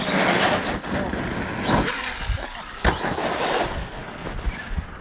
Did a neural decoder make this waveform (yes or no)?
no